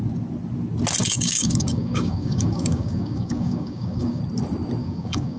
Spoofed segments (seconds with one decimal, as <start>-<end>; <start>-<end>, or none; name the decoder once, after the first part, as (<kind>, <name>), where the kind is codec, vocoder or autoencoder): 1.0-4.2 (codec, DAC); 4.8-5.4